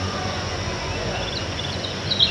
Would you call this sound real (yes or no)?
no